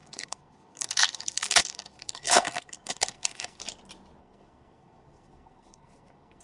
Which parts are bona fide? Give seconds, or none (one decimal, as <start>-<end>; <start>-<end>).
3.6-4.2